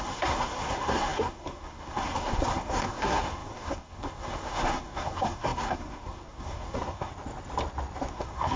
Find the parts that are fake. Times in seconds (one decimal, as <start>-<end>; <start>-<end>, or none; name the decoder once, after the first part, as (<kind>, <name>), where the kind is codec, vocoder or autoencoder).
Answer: 0.0-7.1 (codec, SNAC); 8.1-8.6